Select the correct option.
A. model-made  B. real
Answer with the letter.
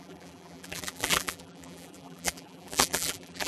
A